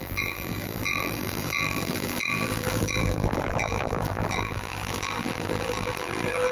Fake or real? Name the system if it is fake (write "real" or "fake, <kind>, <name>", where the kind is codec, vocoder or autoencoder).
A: fake, vocoder, BigVGAN v2